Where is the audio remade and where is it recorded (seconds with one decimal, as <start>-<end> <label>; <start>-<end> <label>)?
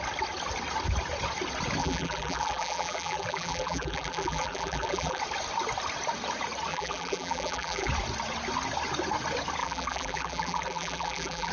0.0-1.8 recorded; 1.8-5.2 remade; 5.2-6.7 recorded; 6.7-7.9 remade; 7.9-9.6 recorded; 9.6-11.5 remade